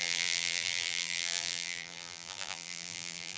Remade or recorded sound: remade